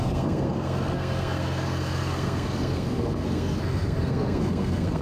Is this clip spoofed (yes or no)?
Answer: yes